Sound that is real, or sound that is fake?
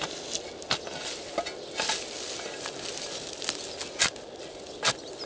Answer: real